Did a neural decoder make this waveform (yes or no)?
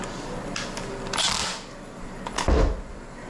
no